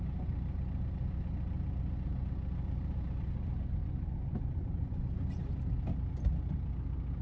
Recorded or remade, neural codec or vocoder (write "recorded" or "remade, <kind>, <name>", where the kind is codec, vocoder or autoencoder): recorded